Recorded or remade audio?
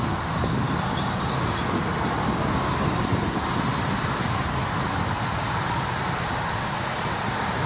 recorded